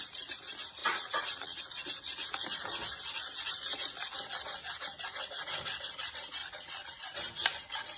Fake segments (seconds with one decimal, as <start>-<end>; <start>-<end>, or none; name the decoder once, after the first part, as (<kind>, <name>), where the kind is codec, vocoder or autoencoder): 0.8-1.6 (vocoder, Vocos); 6.4-7.0